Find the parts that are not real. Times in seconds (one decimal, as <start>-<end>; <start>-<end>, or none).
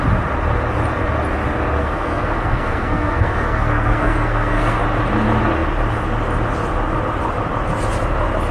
1.8-4.8